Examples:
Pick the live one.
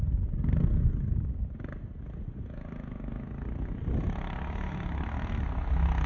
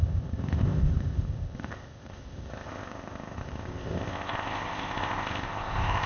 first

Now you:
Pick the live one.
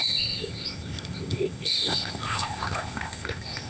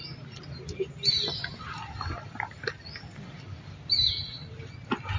second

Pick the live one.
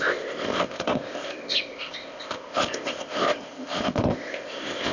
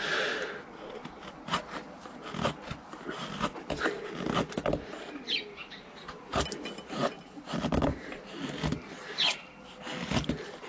second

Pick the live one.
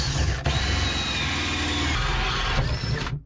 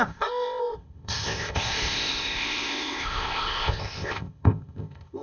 first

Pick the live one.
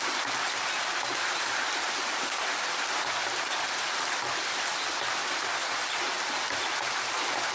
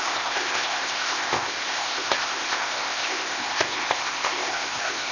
first